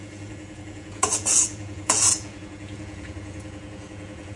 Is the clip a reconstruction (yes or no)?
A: yes